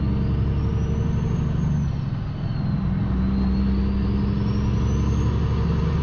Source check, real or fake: real